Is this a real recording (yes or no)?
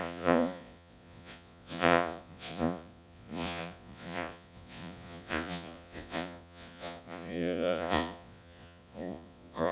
no